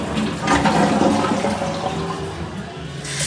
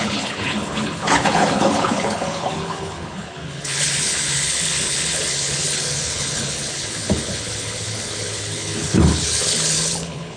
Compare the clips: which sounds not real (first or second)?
second